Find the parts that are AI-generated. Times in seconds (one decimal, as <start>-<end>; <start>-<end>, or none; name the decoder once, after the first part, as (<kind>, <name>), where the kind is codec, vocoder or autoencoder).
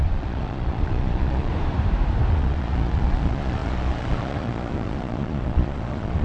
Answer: 0.0-1.5 (vocoder, Vocos); 2.3-6.2